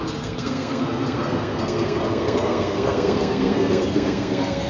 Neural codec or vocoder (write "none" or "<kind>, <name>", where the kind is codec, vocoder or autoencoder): codec, SNAC